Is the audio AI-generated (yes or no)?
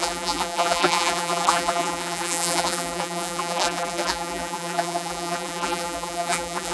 yes